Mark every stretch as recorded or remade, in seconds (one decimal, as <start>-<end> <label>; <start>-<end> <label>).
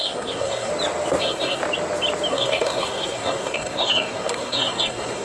0.0-0.7 remade; 0.7-1.2 recorded; 1.2-1.6 remade; 1.6-2.3 recorded; 2.3-5.2 remade